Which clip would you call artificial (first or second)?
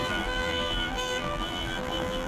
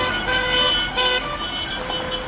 first